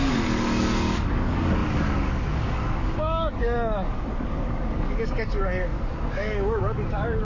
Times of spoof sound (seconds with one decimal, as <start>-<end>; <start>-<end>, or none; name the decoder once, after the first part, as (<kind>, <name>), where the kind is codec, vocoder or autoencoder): 0.0-7.2 (codec, DAC)